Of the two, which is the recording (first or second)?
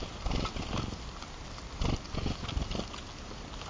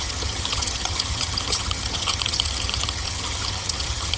first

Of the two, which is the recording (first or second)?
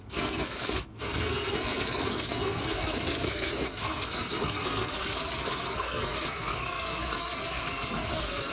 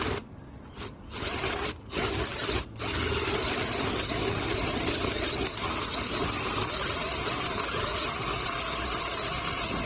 second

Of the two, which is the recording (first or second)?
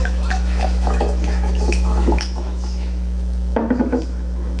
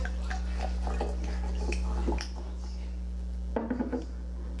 second